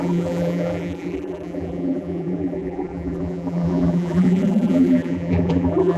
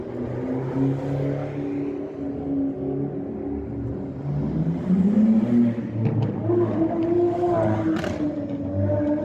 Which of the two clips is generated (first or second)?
first